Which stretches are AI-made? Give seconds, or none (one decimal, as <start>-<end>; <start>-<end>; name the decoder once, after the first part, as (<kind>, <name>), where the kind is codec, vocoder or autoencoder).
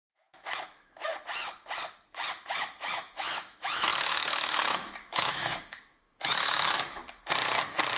0.0-1.1 (autoencoder, DAC-VAE); 2.3-7.0